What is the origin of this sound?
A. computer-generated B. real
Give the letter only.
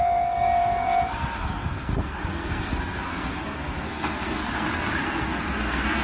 A